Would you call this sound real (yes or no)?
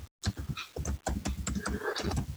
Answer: yes